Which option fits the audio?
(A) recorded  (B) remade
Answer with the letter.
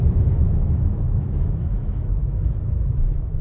B